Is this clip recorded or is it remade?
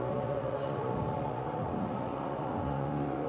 remade